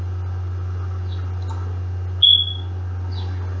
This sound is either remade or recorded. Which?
recorded